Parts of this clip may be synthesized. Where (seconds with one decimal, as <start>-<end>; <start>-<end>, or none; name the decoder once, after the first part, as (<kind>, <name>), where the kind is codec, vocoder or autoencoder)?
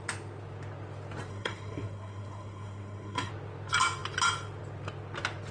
1.3-3.3 (codec, SNAC)